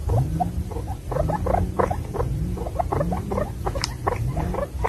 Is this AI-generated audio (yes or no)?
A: yes